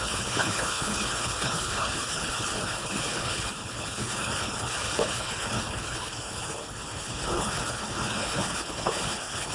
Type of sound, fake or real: fake